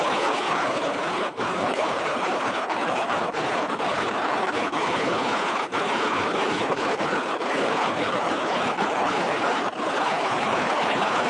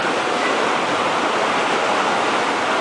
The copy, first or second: first